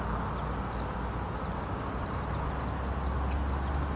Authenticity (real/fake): real